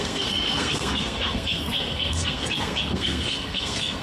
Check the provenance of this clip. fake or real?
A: fake